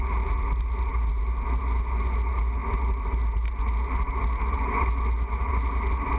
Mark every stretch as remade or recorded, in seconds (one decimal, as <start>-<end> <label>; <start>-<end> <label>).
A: 0.0-6.2 recorded